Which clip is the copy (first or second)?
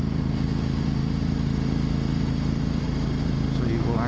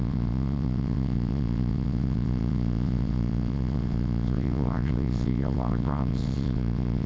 second